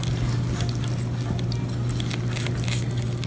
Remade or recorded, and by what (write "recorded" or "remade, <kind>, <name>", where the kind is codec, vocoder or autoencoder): recorded